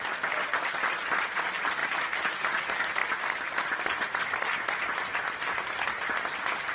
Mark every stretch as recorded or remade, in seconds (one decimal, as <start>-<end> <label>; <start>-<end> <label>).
0.0-3.0 recorded; 3.0-4.6 remade; 4.6-6.7 recorded